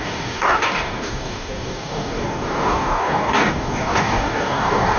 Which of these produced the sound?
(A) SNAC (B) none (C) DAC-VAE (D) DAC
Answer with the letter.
D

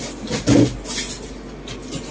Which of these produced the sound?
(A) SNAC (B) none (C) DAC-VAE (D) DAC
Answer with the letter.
B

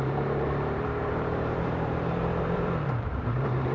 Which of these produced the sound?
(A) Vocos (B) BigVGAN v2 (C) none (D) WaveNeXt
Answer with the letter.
B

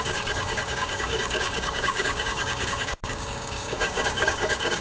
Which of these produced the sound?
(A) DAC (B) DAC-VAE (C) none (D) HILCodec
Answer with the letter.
A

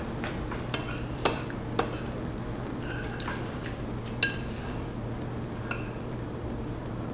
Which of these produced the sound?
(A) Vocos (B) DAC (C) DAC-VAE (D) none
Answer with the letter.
D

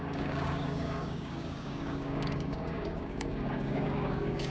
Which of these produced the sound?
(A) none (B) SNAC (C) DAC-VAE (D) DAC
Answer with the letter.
D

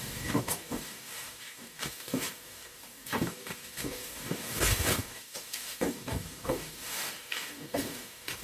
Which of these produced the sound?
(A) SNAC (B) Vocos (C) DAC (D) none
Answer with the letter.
C